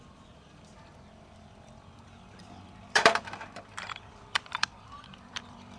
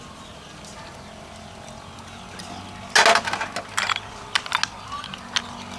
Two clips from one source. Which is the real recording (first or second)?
second